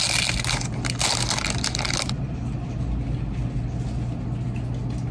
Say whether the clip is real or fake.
real